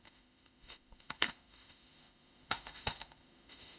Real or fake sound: fake